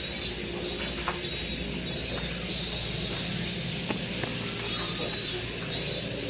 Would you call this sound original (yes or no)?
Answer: yes